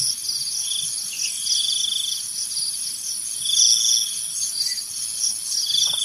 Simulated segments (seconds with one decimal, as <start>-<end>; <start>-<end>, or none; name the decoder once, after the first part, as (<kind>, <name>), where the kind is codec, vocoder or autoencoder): none